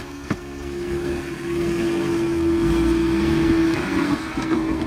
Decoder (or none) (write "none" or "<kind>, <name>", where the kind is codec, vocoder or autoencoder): codec, SNAC